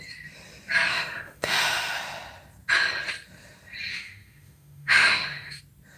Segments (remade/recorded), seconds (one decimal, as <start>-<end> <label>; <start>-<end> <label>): 0.0-0.9 recorded; 0.9-1.9 remade; 1.9-3.9 recorded; 3.9-5.6 remade; 5.6-6.0 recorded